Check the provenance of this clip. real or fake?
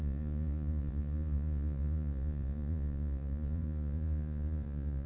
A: fake